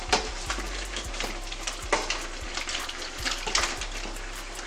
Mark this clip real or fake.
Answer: real